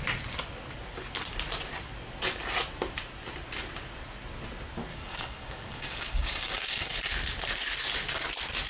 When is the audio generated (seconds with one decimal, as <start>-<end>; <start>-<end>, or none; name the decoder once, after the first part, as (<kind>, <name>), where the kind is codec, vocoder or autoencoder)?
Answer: 4.9-7.0 (codec, DAC)